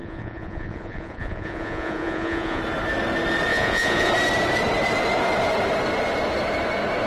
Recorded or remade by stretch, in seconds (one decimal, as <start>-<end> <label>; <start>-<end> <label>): 0.0-2.6 remade; 2.6-3.5 recorded; 3.5-4.1 remade; 4.1-7.1 recorded